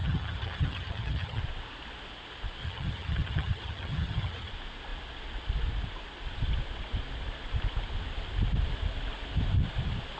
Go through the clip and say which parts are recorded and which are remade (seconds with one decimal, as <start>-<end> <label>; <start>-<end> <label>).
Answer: 0.0-1.4 remade; 1.4-2.6 recorded; 2.6-4.5 remade; 4.5-10.2 recorded